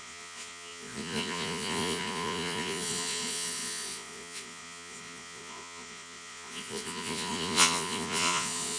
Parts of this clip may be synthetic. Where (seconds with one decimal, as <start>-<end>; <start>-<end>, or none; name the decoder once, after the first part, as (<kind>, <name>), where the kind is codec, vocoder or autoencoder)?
0.0-8.8 (vocoder, Vocos)